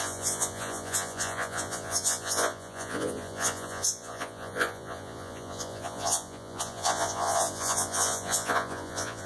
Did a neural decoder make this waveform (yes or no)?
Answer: yes